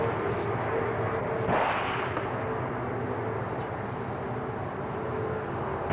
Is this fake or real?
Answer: real